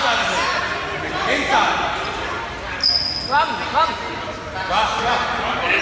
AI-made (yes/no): no